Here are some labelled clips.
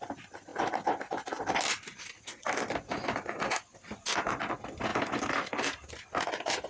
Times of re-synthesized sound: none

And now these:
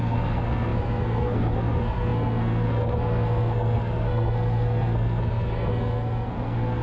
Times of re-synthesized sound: 0.0-6.8 (codec, SNAC)

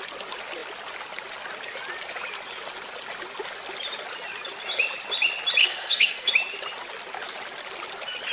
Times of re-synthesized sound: 5.6-6.3 (codec, SNAC)

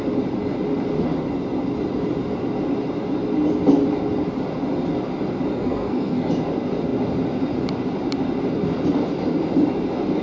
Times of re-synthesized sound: 5.5-6.3 (codec, SNAC)

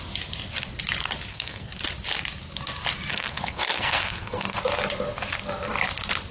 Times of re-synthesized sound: 1.3-1.8 (codec, SNAC); 3.1-4.6

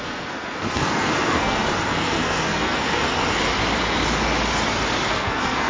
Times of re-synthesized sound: 0.0-3.1 (codec, SNAC); 5.1-5.7

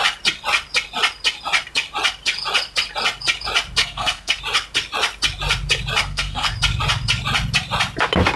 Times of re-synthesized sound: 3.8-4.4 (codec, SNAC); 6.0-6.5